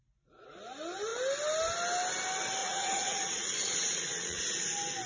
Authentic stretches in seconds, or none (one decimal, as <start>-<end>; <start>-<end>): 0.0-2.6; 4.4-5.1